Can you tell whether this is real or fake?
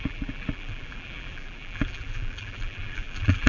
fake